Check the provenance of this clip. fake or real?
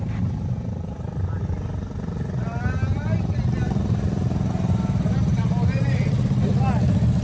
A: real